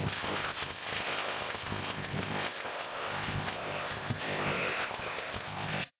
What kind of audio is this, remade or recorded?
remade